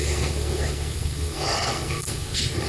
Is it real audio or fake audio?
fake